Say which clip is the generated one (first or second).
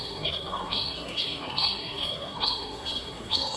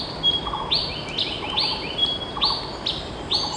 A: first